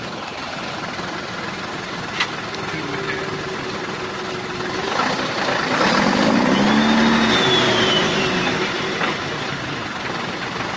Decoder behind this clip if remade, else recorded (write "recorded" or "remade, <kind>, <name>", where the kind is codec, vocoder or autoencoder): recorded